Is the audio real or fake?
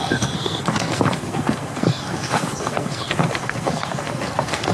fake